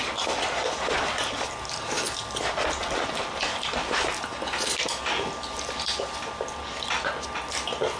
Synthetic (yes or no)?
no